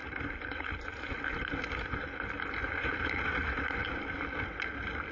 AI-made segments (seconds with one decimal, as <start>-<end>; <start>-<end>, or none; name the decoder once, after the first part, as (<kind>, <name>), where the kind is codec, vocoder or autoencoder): 0.0-1.1 (vocoder, BigVGAN v2)